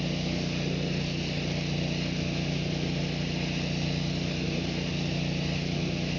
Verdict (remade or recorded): recorded